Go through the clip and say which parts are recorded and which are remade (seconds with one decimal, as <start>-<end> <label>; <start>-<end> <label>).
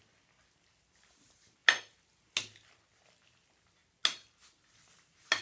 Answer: 0.0-5.4 recorded